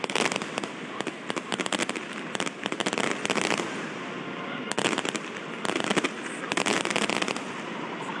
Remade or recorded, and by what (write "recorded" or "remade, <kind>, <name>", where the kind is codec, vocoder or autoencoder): recorded